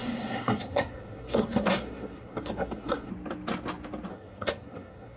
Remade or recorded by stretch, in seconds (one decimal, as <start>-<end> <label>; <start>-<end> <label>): 0.0-3.1 remade; 3.1-4.1 recorded; 4.1-5.2 remade